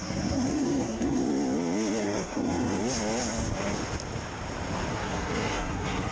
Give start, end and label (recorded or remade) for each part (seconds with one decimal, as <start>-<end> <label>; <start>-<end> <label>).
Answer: 0.0-1.2 remade; 1.2-2.0 recorded; 2.0-2.8 remade; 2.8-4.9 recorded; 4.9-6.1 remade